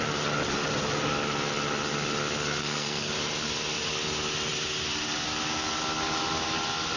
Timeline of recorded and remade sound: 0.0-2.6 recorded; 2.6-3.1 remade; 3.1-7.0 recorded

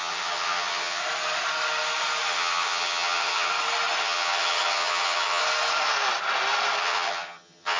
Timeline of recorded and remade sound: 0.0-1.0 remade; 1.0-2.3 recorded; 2.3-3.5 remade; 3.5-4.0 recorded; 4.0-5.4 remade; 5.4-6.8 recorded; 6.8-7.8 remade

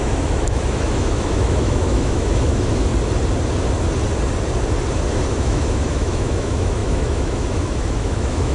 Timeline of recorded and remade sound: 0.0-2.9 remade; 2.9-5.3 recorded; 5.3-8.5 remade

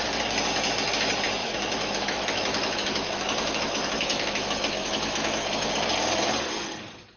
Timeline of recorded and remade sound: 0.0-1.4 recorded; 1.4-5.7 remade; 5.7-7.2 recorded

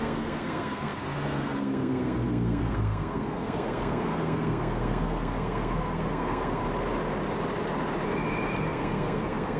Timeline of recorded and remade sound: 0.0-6.6 remade; 6.6-8.6 recorded; 8.6-9.6 remade

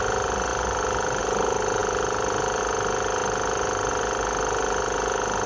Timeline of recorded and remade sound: 0.0-5.5 recorded

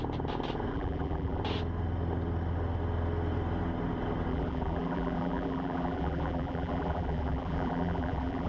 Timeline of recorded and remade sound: 0.0-0.7 recorded; 0.7-1.4 remade; 1.4-4.3 recorded; 4.3-8.5 remade